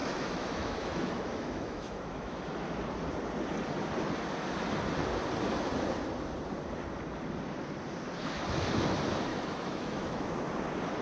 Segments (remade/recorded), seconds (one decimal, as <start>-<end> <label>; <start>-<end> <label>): 0.0-2.5 remade; 2.5-9.3 recorded; 9.3-10.3 remade; 10.3-11.0 recorded

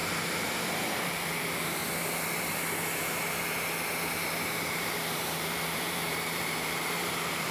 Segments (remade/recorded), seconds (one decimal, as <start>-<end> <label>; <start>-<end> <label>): 0.0-1.0 recorded; 1.0-1.8 remade; 1.8-4.7 recorded; 4.7-7.5 remade

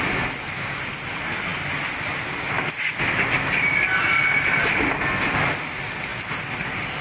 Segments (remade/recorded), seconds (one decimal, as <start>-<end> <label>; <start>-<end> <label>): 0.0-7.0 recorded

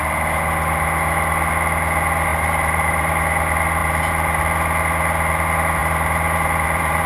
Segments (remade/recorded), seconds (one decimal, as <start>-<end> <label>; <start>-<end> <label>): 0.0-2.3 recorded; 2.3-3.1 remade; 3.1-3.8 recorded; 3.8-4.4 remade; 4.4-5.8 recorded; 5.8-7.1 remade

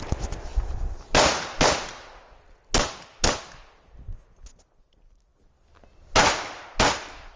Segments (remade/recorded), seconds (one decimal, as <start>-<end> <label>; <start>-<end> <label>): 0.0-7.4 recorded